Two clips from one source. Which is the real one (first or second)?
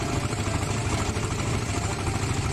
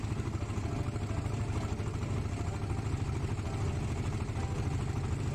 second